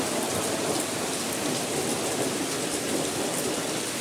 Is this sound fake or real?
real